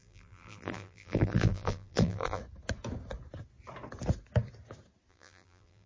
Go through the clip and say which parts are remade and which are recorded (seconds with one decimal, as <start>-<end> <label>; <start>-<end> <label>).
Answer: 0.0-2.4 remade; 2.4-5.1 recorded; 5.1-5.9 remade